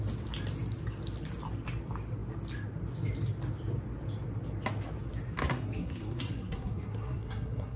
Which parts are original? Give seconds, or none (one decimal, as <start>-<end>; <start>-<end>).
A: 0.0-5.4